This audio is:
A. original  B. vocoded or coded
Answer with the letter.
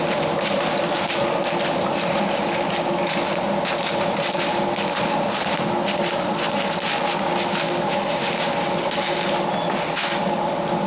A